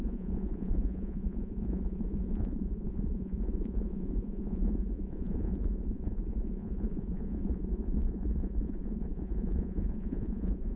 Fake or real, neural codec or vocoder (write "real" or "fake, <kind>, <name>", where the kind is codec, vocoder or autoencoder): fake, vocoder, Vocos